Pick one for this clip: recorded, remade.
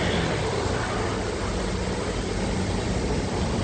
recorded